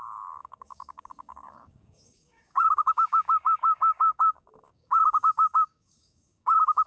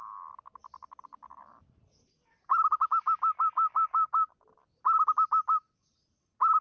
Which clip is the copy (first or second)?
first